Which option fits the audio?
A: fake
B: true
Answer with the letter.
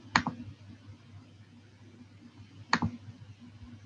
B